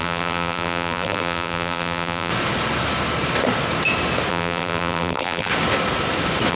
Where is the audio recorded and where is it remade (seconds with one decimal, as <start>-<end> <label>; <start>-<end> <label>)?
0.0-2.3 remade; 2.3-4.3 recorded; 4.3-5.5 remade; 5.5-6.5 recorded